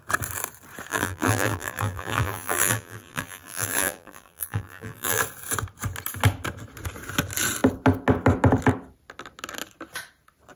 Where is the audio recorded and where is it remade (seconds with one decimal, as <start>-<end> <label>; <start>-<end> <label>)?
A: 0.0-0.9 recorded; 0.9-5.2 remade; 5.2-10.6 recorded